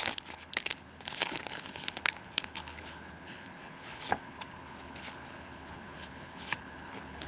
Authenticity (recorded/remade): remade